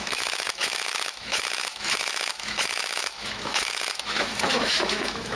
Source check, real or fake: fake